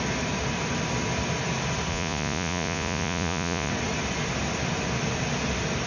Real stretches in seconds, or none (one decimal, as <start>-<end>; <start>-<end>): 0.0-1.9; 3.7-5.9